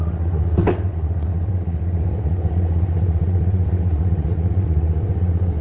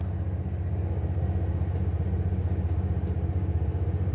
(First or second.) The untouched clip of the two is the second